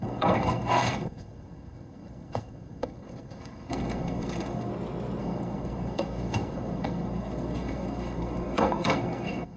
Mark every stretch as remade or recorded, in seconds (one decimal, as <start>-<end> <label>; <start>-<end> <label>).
0.0-4.7 remade; 4.7-5.2 recorded; 5.2-9.6 remade